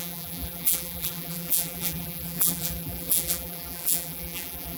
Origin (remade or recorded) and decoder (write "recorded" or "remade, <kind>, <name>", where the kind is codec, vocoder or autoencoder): remade, vocoder, BigVGAN v2